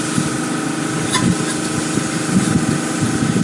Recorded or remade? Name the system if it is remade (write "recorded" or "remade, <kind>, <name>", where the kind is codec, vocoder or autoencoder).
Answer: recorded